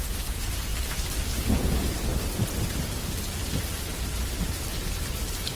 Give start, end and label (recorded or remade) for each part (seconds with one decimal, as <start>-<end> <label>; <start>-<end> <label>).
0.0-0.7 remade; 0.7-1.5 recorded; 1.5-2.1 remade; 2.1-5.5 recorded